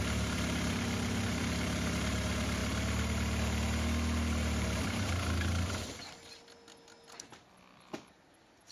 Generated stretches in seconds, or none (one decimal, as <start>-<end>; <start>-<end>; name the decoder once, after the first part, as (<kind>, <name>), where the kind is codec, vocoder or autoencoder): none